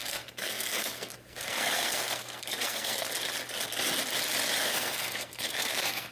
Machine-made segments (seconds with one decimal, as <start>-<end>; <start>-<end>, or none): 0.0-3.1; 4.6-6.1